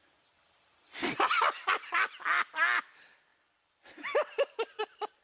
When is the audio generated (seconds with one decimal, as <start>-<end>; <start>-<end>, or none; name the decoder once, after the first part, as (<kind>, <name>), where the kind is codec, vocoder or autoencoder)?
1.0-2.1 (vocoder, BigVGAN v2)